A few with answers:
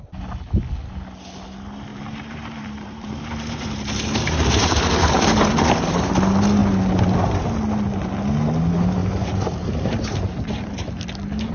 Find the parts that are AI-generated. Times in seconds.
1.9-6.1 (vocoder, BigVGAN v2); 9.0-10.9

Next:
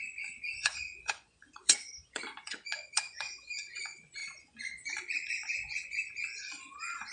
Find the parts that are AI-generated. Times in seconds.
0.0-7.1 (vocoder, Vocos)